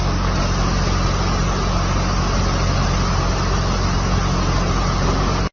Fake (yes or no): no